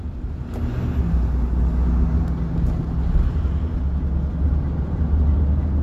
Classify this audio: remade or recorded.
recorded